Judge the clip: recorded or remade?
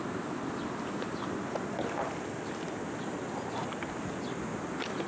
recorded